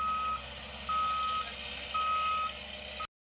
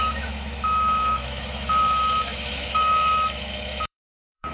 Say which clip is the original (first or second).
first